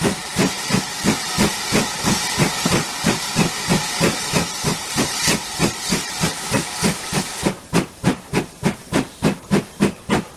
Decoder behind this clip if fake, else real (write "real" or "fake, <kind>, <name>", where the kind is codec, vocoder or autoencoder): fake, vocoder, BigVGAN v2